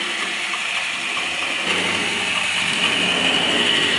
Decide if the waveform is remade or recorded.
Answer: recorded